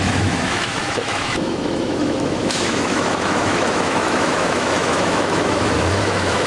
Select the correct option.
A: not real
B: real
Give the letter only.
A